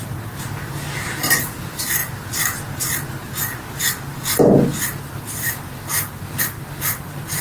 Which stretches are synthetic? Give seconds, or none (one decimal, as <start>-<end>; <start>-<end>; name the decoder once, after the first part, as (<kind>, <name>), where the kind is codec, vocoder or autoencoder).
none

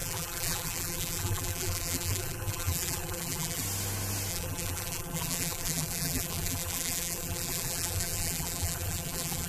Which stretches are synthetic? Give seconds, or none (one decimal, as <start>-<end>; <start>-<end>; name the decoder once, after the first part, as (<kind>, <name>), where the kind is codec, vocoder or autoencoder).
0.0-3.6 (vocoder, BigVGAN v2); 4.3-9.5

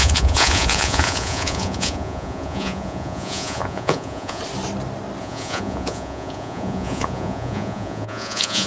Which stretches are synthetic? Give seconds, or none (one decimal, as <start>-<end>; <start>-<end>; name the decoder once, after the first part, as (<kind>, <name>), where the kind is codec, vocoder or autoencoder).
0.0-4.4 (vocoder, Vocos); 5.2-8.7

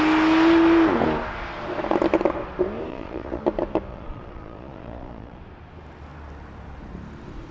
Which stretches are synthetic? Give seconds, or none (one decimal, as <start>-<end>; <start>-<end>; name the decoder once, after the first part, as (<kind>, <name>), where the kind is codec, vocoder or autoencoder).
2.9-3.4 (vocoder, Vocos); 3.9-5.4

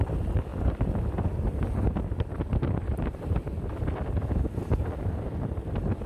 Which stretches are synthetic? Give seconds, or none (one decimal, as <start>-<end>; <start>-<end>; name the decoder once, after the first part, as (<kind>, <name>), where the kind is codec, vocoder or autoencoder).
none

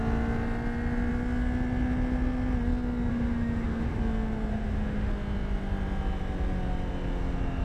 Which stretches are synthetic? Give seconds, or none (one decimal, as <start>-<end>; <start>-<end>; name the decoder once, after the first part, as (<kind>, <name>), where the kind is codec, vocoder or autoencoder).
3.1-4.0 (autoencoder, DAC-VAE); 4.5-5.1

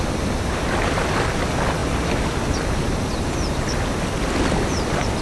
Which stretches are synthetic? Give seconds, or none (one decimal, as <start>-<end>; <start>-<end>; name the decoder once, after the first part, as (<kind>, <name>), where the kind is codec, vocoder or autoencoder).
none

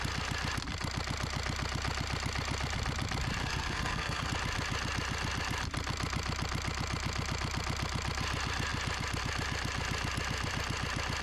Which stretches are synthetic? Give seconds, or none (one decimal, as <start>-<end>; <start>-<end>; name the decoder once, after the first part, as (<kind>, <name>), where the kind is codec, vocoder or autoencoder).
3.4-4.3 (codec, SNAC)